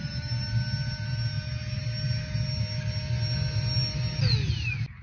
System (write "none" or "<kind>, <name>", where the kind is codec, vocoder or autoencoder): none